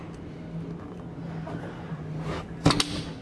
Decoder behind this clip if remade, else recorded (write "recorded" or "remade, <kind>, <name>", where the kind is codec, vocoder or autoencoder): recorded